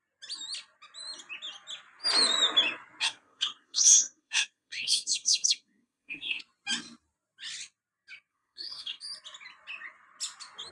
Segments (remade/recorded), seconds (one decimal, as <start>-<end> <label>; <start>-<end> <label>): 0.0-3.0 recorded; 3.0-6.4 remade; 6.4-8.3 recorded; 8.3-9.0 remade; 9.0-10.7 recorded